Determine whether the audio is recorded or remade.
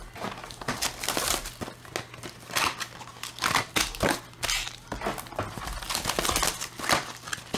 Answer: recorded